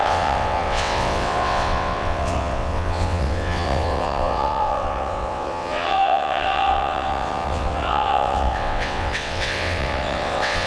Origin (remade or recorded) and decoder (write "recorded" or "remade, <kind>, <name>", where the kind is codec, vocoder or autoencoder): remade, vocoder, WaveNeXt